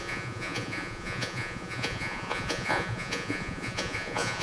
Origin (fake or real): fake